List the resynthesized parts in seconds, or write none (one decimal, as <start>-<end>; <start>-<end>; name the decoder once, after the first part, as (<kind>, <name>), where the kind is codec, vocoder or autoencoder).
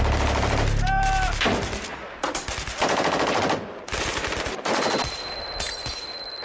none